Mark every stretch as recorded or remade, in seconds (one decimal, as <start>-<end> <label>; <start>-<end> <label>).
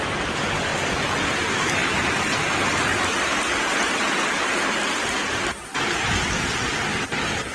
0.0-7.5 recorded